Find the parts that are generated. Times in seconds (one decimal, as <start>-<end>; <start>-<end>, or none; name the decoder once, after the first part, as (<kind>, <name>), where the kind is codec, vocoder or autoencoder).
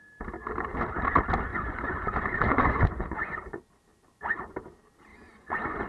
1.5-3.6 (vocoder, Vocos); 5.1-5.9